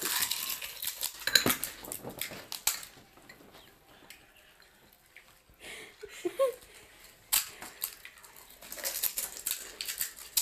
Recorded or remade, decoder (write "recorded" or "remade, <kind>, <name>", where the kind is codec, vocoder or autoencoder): recorded